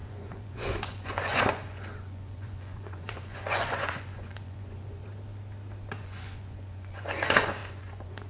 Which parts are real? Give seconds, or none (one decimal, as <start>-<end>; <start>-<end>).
5.0-6.0

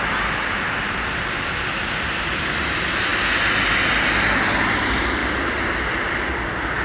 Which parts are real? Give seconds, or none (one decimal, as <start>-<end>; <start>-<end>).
0.0-6.8